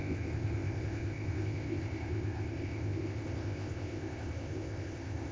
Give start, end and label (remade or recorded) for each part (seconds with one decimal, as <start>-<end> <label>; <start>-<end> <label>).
0.0-5.3 remade